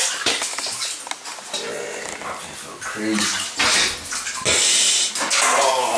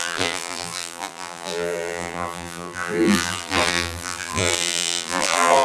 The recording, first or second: first